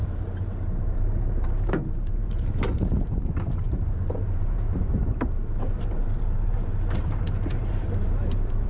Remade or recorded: remade